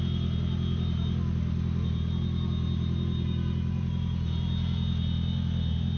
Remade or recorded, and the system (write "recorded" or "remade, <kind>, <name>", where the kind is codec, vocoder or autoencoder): recorded